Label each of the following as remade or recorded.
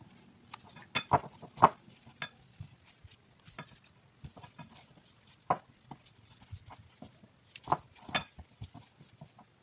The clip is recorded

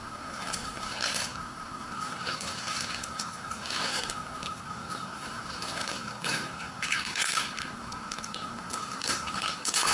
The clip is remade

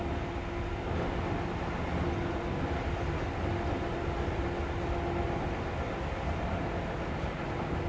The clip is recorded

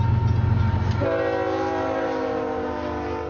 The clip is recorded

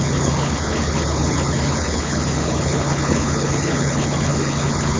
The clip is remade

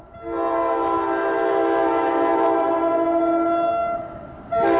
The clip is recorded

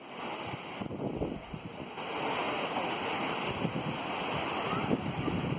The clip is recorded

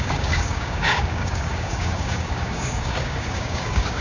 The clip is remade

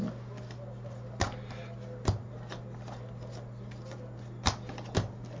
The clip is recorded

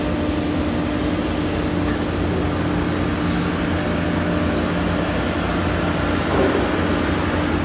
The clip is recorded